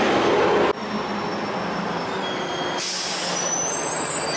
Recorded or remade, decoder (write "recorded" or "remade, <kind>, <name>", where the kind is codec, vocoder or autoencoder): recorded